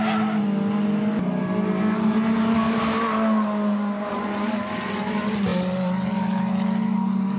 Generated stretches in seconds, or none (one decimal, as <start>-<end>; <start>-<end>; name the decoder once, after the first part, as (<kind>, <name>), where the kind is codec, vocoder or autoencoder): none